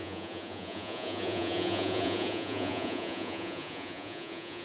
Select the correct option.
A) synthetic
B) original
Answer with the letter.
A